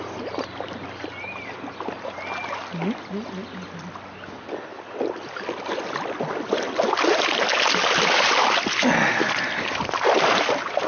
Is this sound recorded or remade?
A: recorded